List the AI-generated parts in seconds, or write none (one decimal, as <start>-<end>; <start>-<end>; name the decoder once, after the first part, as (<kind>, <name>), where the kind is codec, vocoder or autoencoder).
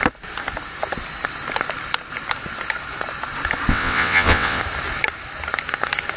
3.7-4.6 (vocoder, WaveNeXt)